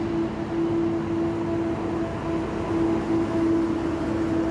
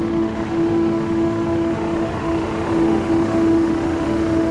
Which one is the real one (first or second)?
first